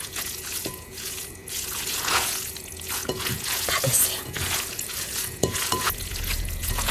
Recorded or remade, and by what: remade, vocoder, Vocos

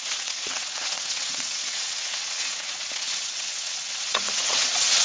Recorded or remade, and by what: remade, vocoder, WaveNeXt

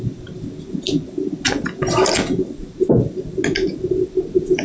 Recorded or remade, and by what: recorded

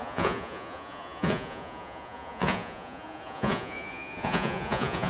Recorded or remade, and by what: remade, vocoder, Vocos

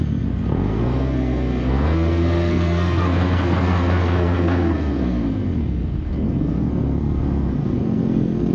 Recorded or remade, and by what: remade, codec, SNAC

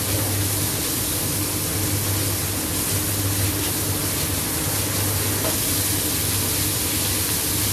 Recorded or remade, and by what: recorded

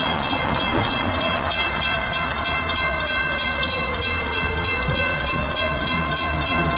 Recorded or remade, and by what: remade, vocoder, Vocos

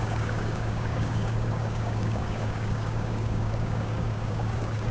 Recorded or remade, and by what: remade, codec, DAC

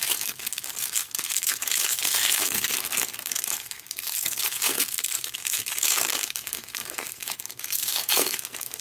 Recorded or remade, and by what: remade, codec, SNAC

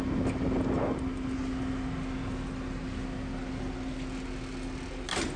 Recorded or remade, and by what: recorded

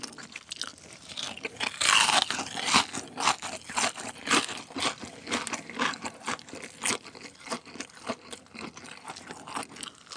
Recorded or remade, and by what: recorded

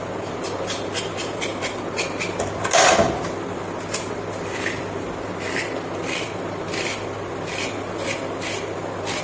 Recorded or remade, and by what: recorded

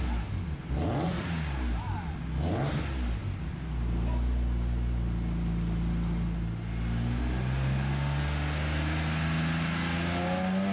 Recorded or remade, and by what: recorded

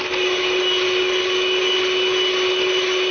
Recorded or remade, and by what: recorded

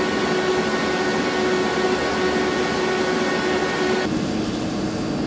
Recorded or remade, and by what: recorded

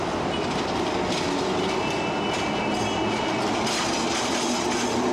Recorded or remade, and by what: recorded